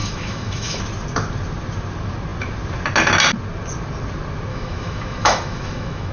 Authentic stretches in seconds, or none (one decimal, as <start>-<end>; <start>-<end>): 0.8-4.5